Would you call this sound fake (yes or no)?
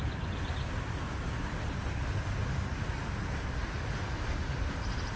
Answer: no